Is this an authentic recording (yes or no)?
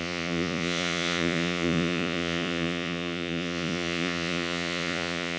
no